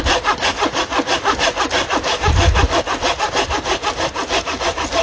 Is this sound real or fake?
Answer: real